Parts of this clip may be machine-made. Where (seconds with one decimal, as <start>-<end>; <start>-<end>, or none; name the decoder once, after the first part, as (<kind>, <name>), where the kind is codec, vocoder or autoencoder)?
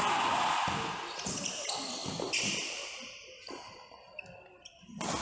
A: none